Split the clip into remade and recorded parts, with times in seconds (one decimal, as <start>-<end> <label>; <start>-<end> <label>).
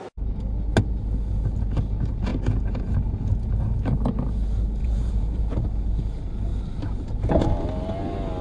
0.0-2.3 recorded; 2.3-3.6 remade; 3.6-4.8 recorded; 4.8-5.4 remade; 5.4-8.4 recorded